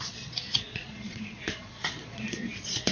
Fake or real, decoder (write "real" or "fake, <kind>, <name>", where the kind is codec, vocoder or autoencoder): fake, vocoder, Vocos